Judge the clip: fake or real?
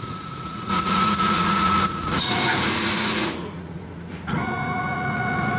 fake